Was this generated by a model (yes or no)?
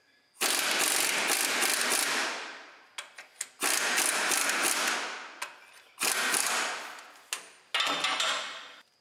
no